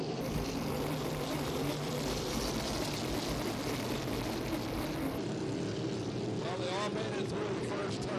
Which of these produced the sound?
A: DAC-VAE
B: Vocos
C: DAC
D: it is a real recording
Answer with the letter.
D